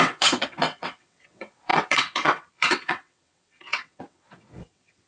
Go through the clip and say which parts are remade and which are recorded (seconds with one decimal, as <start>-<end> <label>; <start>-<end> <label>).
0.0-5.1 remade